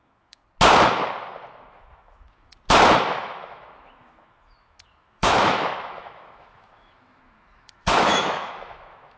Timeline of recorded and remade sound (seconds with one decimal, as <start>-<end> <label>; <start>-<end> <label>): 0.0-0.4 remade; 0.4-1.7 recorded; 1.7-2.5 remade; 2.5-3.1 recorded; 3.1-9.2 remade